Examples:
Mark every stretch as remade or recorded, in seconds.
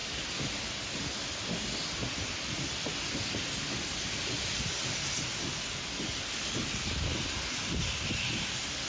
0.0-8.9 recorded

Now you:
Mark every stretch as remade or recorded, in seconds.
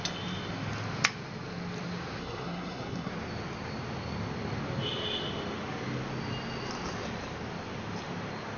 0.0-2.2 recorded; 2.2-3.1 remade; 3.1-8.6 recorded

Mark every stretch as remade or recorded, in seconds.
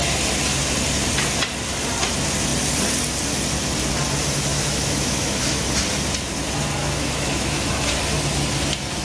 0.0-4.5 recorded; 4.5-5.7 remade; 5.7-6.8 recorded; 6.8-7.9 remade; 7.9-9.0 recorded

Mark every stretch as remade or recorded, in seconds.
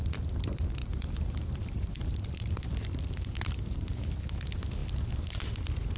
0.0-0.8 recorded; 0.8-4.0 remade; 4.0-6.0 recorded